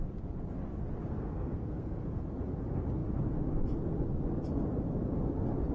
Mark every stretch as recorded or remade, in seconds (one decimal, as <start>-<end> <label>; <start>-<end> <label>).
0.0-1.1 recorded; 1.1-2.2 remade; 2.2-5.7 recorded